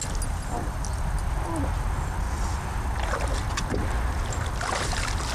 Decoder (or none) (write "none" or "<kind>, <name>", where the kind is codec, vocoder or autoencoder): none